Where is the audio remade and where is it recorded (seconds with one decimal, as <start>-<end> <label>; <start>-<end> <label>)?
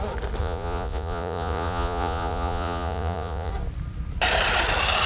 0.0-0.4 recorded; 0.4-3.5 remade; 3.5-5.1 recorded